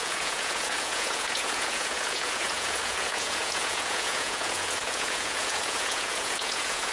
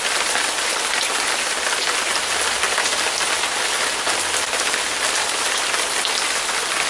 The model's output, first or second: first